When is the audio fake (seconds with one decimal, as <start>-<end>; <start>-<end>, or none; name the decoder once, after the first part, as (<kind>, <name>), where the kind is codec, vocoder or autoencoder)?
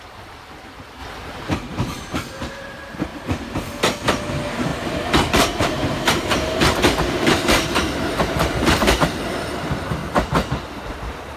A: 0.0-3.1 (vocoder, BigVGAN v2); 4.3-4.7; 5.3-10.0; 10.9-11.4